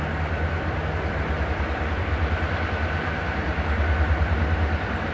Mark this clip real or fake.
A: fake